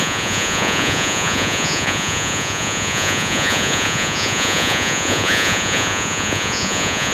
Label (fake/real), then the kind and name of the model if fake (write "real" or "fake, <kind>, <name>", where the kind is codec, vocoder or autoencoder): fake, vocoder, Vocos